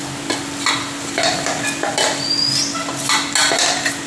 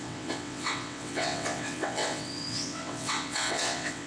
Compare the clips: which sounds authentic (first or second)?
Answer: first